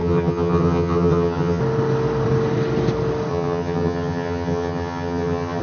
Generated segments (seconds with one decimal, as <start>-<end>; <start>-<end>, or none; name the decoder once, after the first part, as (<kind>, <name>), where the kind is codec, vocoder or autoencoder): 0.0-1.6 (vocoder, HiFi-GAN); 3.3-5.6